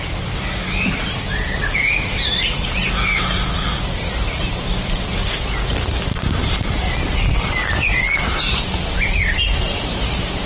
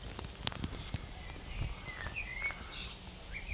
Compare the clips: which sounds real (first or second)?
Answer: second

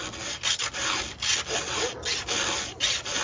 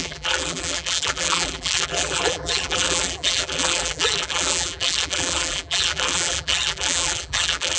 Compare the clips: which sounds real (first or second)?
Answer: first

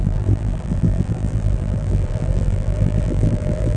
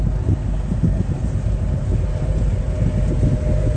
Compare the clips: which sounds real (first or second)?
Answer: second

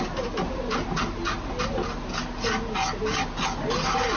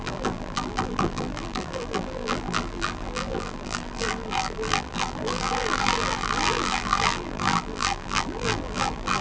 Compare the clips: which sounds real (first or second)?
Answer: first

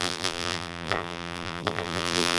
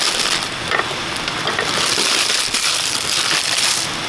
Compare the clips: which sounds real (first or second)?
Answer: second